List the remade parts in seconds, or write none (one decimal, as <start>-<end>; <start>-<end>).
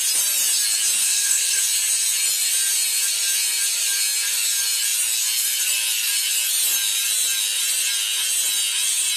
1.0-1.6